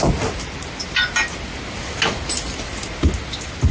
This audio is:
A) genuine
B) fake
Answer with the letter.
A